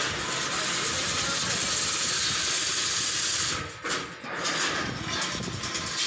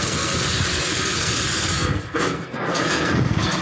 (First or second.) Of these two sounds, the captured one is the first